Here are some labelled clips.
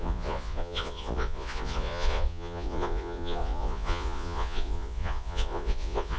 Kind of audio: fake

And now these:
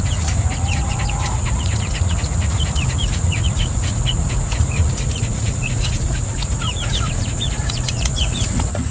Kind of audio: fake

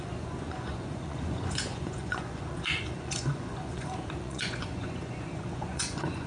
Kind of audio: fake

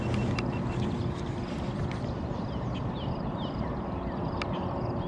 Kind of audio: real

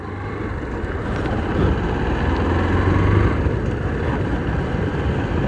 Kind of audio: real